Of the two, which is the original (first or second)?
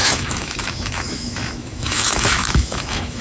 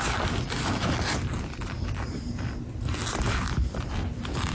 second